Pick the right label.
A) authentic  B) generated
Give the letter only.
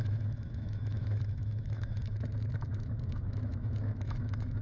B